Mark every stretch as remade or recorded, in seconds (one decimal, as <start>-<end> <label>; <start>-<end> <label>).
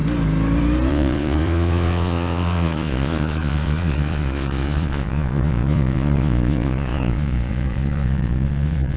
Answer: 0.0-0.9 recorded; 0.9-9.0 remade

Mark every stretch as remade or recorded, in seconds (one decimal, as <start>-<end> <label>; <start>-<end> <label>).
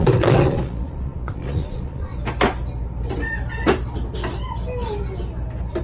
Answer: 0.0-2.1 remade; 2.1-5.8 recorded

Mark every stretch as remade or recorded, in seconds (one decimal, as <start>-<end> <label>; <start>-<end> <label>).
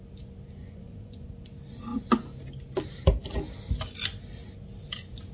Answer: 0.0-0.6 recorded; 0.6-1.3 remade; 1.3-5.3 recorded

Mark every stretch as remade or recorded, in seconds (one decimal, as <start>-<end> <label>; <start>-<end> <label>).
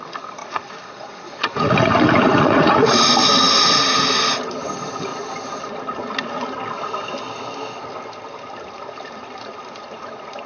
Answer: 0.0-0.4 recorded; 0.4-2.9 remade; 2.9-10.5 recorded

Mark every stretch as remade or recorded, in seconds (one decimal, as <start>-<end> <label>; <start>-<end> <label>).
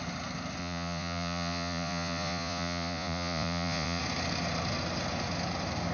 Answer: 0.0-0.6 recorded; 0.6-4.0 remade; 4.0-5.9 recorded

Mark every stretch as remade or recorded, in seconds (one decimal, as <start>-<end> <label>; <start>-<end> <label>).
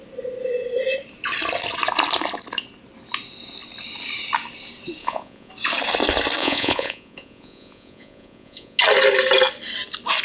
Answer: 0.0-5.0 recorded; 5.0-5.5 remade; 5.5-6.4 recorded; 6.4-8.8 remade; 8.8-10.2 recorded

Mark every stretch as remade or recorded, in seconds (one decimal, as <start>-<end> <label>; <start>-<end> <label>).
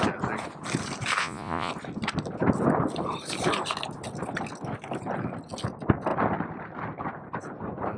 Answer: 0.0-1.2 recorded; 1.2-1.7 remade; 1.7-8.0 recorded